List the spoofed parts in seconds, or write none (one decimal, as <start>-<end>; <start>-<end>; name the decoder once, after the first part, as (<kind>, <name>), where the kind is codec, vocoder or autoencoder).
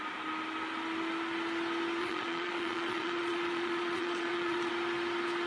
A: 2.0-4.7 (vocoder, Vocos)